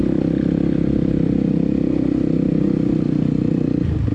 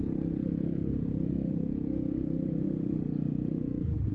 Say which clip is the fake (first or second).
second